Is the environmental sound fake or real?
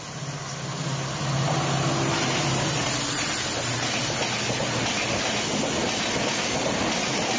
real